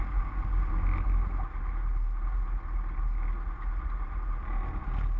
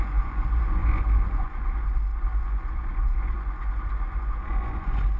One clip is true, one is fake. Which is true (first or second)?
first